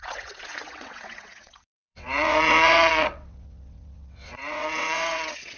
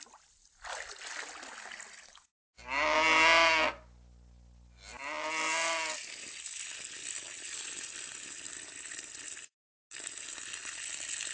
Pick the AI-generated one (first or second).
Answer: first